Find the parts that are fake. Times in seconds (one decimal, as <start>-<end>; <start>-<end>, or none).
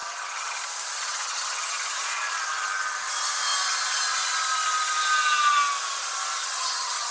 0.0-0.6; 1.1-2.0; 6.4-7.1